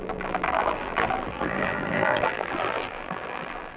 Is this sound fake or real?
fake